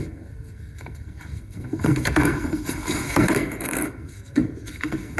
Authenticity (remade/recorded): remade